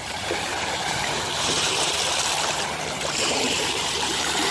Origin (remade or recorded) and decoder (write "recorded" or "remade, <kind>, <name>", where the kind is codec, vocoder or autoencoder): remade, vocoder, BigVGAN v2